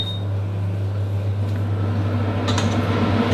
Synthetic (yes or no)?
no